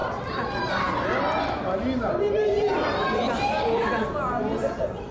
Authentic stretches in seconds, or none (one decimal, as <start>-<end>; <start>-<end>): 0.0-5.1